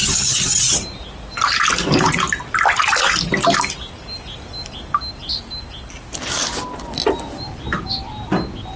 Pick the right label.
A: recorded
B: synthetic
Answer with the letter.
A